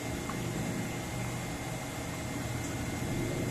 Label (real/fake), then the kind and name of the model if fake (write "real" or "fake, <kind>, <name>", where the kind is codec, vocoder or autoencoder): real